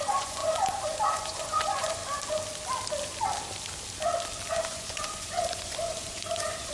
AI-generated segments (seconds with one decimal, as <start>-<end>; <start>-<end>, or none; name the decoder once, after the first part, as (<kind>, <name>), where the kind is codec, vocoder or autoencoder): 0.0-2.0 (vocoder, Vocos); 4.5-6.7